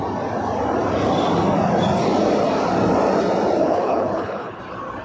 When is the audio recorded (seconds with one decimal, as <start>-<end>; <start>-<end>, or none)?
0.0-3.6; 4.6-5.0

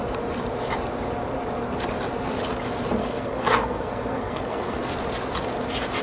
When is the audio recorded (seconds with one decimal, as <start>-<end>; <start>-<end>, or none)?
0.0-3.0; 4.9-6.0

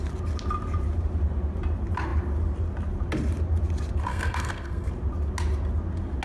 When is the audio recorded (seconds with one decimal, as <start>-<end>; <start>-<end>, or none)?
0.0-4.1; 4.9-6.2

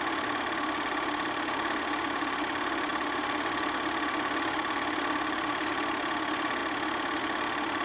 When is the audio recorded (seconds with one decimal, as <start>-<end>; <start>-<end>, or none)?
0.0-7.8

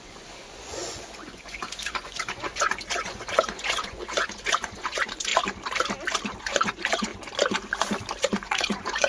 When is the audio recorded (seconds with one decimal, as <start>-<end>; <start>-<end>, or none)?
5.3-6.4; 7.1-8.2